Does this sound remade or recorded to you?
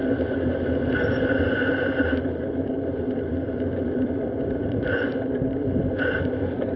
remade